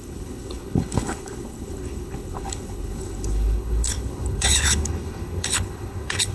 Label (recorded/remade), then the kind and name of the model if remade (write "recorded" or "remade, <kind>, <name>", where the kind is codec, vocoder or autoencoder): remade, codec, HILCodec